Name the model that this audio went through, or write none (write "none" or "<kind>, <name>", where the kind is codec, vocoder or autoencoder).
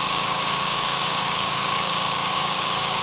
codec, DAC